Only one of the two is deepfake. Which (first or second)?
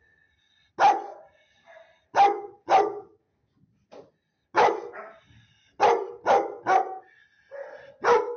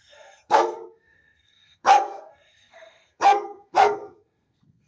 second